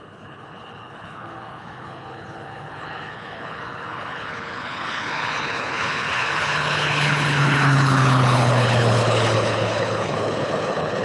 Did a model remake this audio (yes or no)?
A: yes